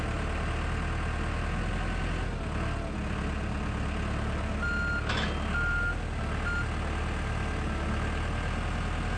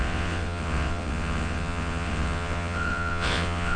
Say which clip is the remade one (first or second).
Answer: second